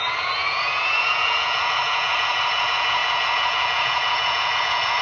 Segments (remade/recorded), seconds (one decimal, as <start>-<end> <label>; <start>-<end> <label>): 0.0-5.0 remade